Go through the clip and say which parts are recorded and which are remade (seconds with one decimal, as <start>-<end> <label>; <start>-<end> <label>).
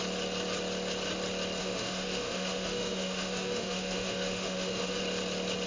0.0-1.6 recorded; 1.6-5.0 remade; 5.0-5.7 recorded